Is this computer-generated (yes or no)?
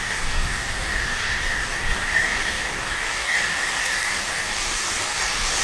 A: yes